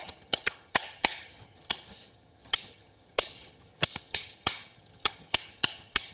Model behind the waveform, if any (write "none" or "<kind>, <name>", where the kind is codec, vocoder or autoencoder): vocoder, HiFi-GAN